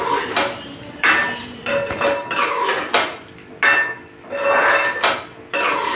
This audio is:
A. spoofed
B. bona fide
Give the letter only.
B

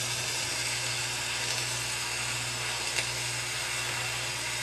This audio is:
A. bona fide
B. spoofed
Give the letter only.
A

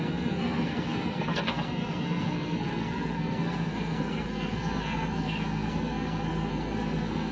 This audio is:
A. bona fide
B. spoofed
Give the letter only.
B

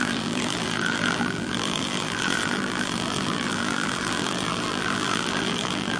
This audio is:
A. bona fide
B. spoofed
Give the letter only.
B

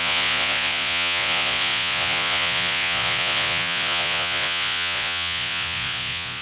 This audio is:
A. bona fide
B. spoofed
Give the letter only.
B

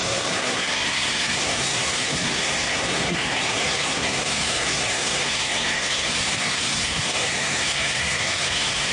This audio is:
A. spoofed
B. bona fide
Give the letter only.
A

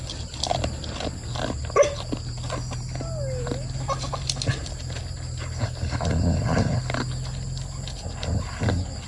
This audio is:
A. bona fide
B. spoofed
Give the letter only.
A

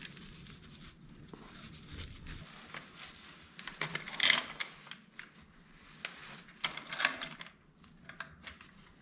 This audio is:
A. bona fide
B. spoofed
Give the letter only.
A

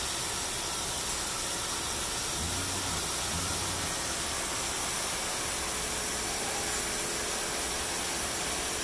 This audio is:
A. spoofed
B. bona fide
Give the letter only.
B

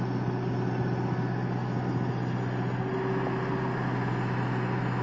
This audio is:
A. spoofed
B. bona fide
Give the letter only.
B